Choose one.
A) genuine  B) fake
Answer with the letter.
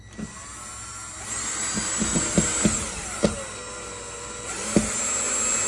A